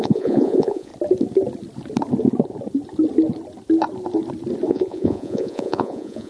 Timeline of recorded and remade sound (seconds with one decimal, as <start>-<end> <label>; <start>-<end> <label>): 0.0-0.9 remade; 0.9-4.7 recorded; 4.7-6.3 remade